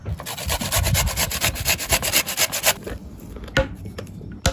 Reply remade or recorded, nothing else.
recorded